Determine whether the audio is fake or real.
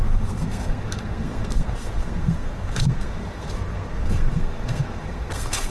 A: fake